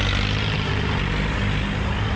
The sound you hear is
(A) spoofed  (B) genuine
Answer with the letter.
B